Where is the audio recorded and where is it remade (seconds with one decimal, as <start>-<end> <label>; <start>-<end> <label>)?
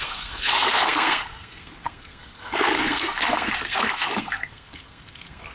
0.0-5.5 remade